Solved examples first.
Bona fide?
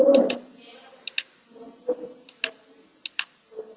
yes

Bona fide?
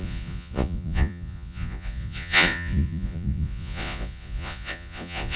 no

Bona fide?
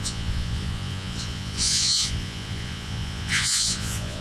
no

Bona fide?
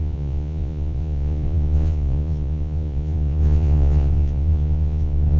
no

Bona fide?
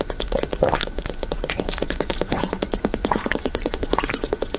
no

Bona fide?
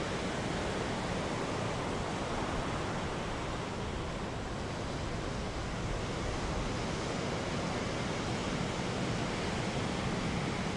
yes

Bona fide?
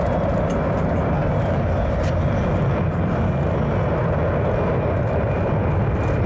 yes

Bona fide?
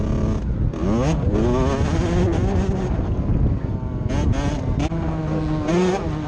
yes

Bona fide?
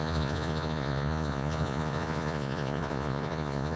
no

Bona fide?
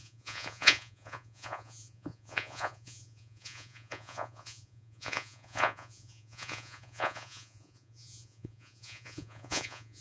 no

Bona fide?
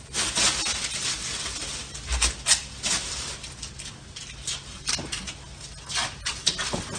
yes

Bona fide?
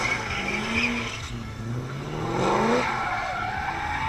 yes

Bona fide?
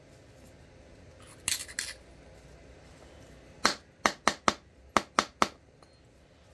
yes